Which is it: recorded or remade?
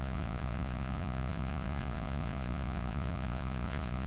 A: remade